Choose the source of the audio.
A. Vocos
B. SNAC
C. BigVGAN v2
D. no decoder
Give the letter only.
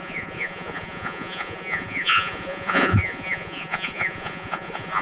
A